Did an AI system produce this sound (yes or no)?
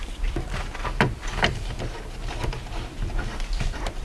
yes